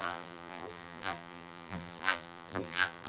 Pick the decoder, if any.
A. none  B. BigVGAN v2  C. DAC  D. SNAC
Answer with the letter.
B